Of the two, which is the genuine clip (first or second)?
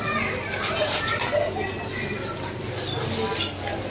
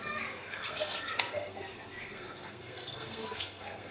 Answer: first